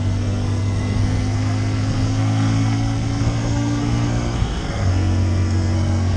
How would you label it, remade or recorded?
remade